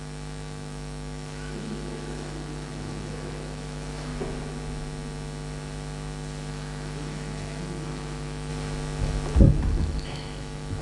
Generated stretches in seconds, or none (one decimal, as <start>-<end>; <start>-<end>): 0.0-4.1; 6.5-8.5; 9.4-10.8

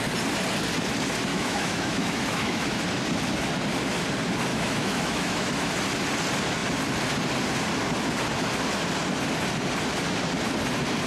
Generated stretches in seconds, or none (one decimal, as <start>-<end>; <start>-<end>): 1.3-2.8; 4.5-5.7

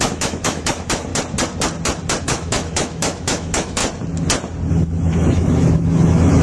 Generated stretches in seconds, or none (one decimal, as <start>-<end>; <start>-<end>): 0.0-1.1; 2.2-3.8; 4.7-6.4

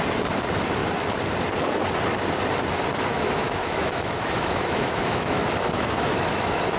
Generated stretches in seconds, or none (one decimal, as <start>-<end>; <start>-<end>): 3.1-6.8